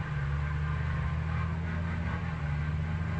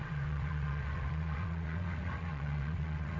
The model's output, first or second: second